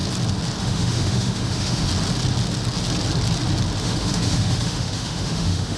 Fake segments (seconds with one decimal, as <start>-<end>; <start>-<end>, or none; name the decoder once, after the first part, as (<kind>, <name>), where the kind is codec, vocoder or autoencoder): 0.6-1.9 (autoencoder, DAC-VAE); 3.8-5.8